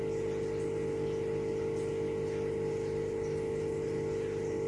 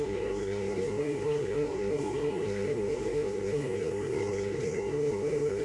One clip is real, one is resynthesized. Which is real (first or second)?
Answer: first